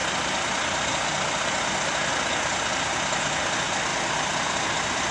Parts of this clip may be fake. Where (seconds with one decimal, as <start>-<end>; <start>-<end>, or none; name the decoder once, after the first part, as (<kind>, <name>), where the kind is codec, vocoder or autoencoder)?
none